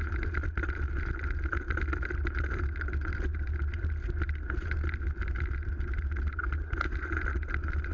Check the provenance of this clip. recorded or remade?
recorded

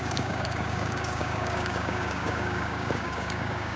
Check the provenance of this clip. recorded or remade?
remade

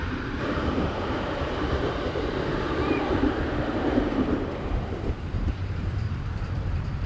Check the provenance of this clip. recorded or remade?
remade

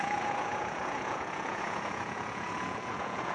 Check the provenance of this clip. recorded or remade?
remade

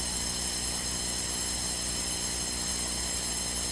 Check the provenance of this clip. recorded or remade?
recorded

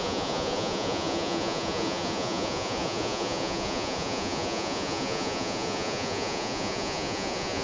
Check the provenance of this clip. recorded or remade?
remade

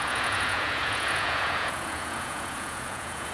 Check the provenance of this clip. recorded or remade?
remade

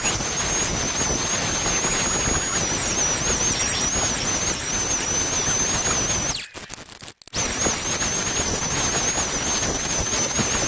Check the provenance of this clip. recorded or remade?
recorded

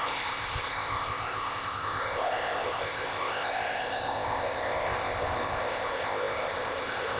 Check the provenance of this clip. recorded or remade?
remade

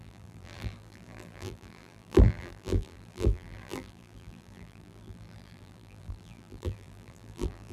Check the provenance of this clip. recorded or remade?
remade